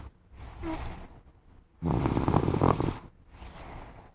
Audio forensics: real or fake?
fake